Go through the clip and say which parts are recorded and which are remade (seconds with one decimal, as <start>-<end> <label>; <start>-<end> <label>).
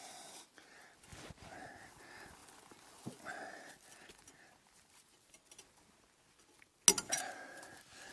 0.0-8.1 recorded